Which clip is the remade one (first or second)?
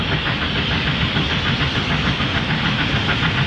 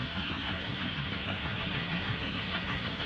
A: second